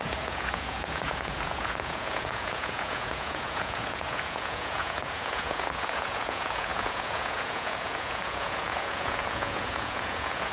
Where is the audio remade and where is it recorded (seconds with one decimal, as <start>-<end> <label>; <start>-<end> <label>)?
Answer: 0.0-10.5 remade